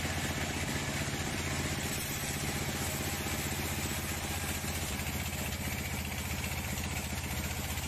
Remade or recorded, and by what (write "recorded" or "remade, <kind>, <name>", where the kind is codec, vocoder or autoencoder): recorded